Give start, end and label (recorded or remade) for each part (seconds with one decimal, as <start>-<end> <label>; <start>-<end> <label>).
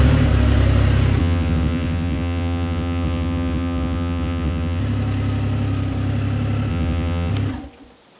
0.0-1.2 recorded; 1.2-4.8 remade; 4.8-6.7 recorded; 6.7-7.3 remade; 7.3-8.2 recorded